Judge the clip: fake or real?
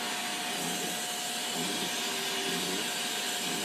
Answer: real